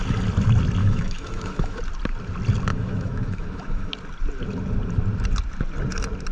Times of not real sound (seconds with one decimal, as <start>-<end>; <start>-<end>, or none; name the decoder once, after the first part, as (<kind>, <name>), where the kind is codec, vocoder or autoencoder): 0.8-1.8 (autoencoder, DAC-VAE); 2.7-3.9